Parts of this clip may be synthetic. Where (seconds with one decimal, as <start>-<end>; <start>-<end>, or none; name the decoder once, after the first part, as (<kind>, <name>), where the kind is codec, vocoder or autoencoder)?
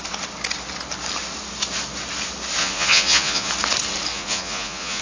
2.6-3.5 (vocoder, Vocos); 4.1-5.0